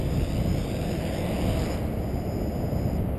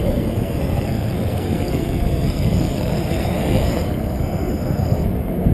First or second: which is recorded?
first